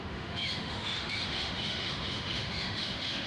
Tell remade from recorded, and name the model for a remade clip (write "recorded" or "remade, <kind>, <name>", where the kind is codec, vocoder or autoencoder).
remade, autoencoder, DAC-VAE